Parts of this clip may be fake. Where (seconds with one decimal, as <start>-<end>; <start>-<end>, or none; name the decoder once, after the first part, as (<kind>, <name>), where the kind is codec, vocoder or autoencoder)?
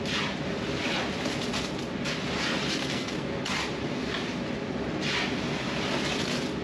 2.8-3.4 (codec, SNAC)